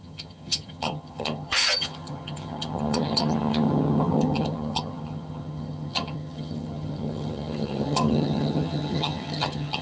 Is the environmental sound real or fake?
fake